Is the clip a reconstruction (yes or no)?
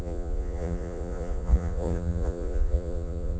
yes